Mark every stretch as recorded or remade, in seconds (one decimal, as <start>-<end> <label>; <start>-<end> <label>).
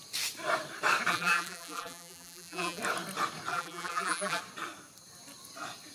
0.0-1.1 recorded; 1.1-2.8 remade; 2.8-3.5 recorded; 3.5-4.4 remade; 4.4-5.9 recorded